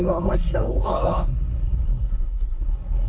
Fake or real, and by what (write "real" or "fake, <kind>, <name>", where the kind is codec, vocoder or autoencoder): fake, codec, SNAC